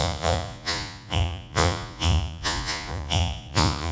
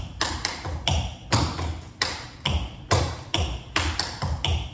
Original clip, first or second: second